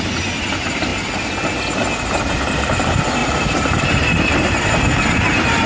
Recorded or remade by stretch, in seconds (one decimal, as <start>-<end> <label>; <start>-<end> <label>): 0.0-3.2 recorded; 3.2-4.2 remade; 4.2-5.7 recorded